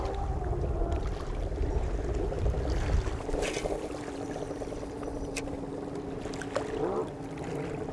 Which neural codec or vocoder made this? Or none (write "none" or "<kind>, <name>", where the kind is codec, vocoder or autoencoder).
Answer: none